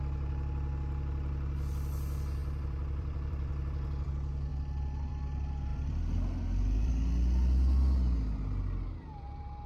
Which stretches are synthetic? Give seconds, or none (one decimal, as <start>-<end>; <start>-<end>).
2.4-4.1; 5.7-6.9